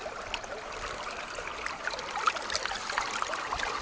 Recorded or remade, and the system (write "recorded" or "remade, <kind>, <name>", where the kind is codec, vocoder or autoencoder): recorded